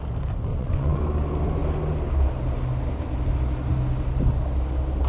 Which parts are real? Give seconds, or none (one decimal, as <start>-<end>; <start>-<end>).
0.0-0.5; 1.0-5.1